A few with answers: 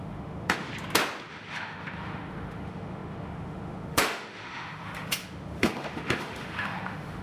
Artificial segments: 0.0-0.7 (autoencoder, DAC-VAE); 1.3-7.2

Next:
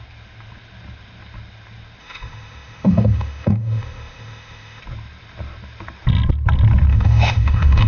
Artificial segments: 2.0-4.8 (autoencoder, DAC-VAE); 6.9-7.9

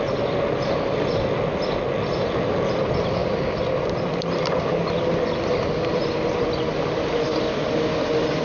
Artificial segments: none

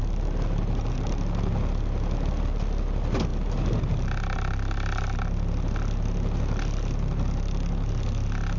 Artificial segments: none

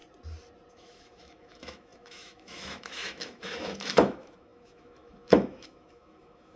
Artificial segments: 0.7-6.6 (autoencoder, DAC-VAE)

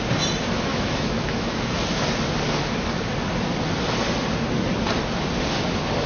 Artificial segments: 0.7-2.0 (autoencoder, DAC-VAE)

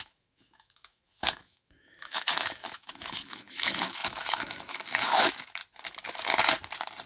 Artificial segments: 0.0-5.6 (autoencoder, DAC-VAE)